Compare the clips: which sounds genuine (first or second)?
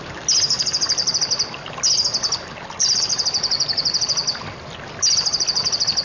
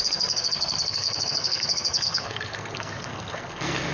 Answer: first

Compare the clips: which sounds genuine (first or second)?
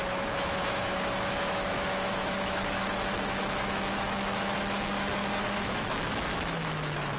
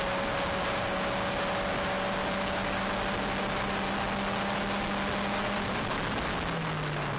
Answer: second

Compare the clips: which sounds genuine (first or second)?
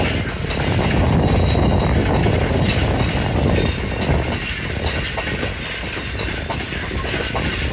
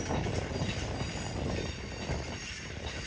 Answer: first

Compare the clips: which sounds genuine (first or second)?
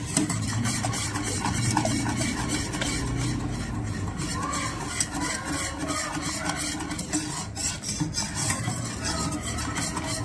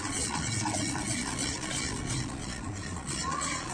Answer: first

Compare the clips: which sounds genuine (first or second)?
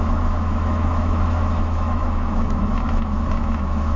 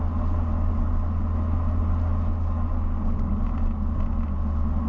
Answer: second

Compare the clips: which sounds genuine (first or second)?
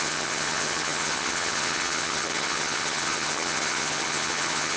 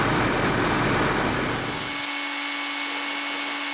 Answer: second